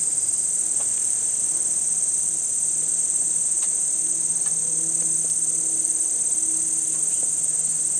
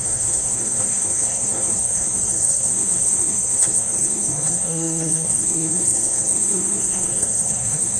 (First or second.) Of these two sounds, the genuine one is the first